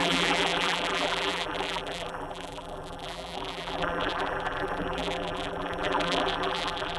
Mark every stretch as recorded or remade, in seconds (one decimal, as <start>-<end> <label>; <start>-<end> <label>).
0.0-7.0 remade